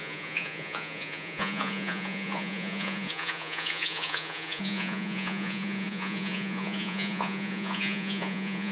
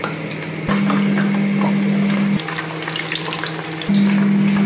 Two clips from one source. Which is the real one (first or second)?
second